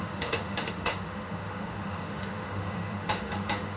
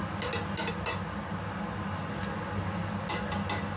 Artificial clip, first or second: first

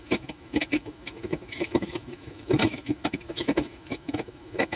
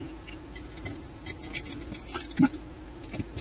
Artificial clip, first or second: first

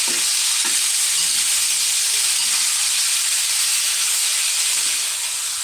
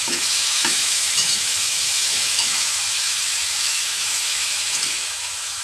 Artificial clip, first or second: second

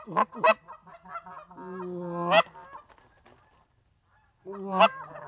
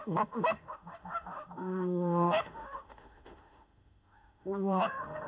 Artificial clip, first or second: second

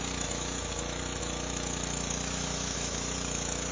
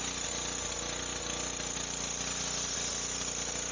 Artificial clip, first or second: first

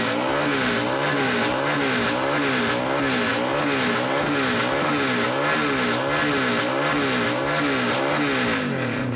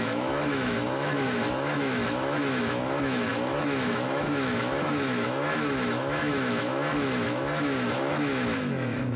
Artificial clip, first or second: second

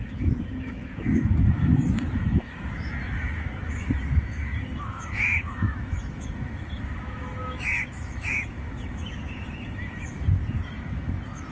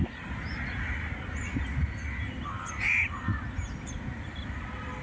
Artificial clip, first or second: first